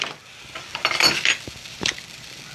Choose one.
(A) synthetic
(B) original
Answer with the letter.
A